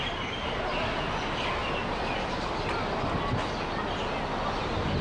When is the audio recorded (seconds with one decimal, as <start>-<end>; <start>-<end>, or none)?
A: 0.0-5.0